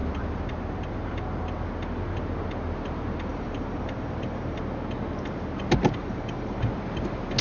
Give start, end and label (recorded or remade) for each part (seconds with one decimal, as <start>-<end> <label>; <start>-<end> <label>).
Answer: 0.0-3.3 recorded; 3.3-4.6 remade; 4.6-6.0 recorded; 6.0-6.6 remade; 6.6-7.4 recorded